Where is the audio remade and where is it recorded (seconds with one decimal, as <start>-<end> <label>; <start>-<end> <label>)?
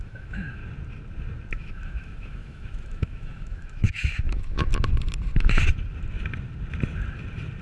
0.0-0.6 remade; 0.6-1.5 recorded; 1.5-4.7 remade; 4.7-7.6 recorded